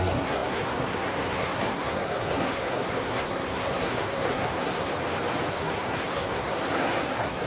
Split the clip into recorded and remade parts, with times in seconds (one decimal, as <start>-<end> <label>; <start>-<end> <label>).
0.0-4.9 remade; 4.9-5.5 recorded; 5.5-7.5 remade